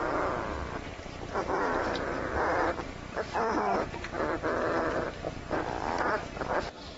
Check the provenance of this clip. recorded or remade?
remade